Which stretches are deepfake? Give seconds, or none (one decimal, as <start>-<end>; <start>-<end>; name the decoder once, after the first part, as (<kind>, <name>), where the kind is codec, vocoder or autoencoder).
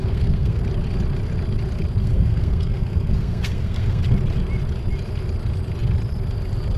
0.0-0.6 (codec, SNAC); 2.0-4.0